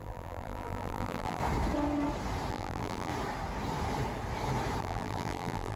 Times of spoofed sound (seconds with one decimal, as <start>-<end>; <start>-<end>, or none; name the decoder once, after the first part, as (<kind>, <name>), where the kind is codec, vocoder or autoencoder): 0.0-1.4 (vocoder, BigVGAN v2); 2.5-3.1; 4.8-5.8